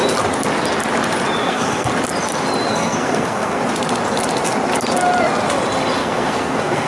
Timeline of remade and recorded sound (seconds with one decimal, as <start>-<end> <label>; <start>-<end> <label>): 0.0-1.4 recorded; 1.4-1.9 remade; 1.9-2.7 recorded; 2.7-3.6 remade; 3.6-6.0 recorded; 6.0-6.9 remade